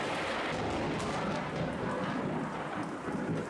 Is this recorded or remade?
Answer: recorded